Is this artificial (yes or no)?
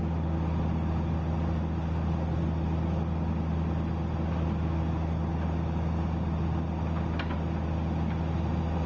no